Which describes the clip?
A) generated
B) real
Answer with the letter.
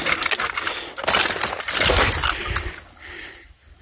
B